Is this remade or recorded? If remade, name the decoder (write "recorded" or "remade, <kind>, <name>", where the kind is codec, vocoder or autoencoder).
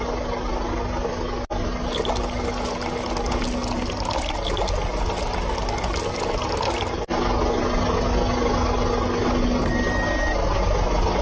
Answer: recorded